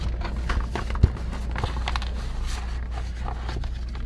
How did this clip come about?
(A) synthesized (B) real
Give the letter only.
B